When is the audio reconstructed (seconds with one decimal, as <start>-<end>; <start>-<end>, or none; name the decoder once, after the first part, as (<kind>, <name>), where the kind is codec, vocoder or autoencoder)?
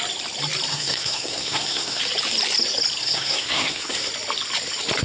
0.7-2.0 (codec, SNAC); 3.0-4.1